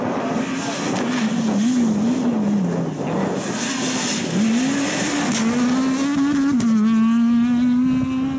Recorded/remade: recorded